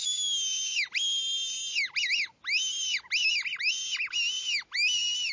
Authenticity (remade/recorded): recorded